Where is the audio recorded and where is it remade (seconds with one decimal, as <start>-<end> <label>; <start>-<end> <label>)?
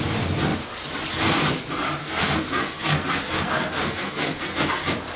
0.0-2.0 recorded; 2.0-4.7 remade; 4.7-5.2 recorded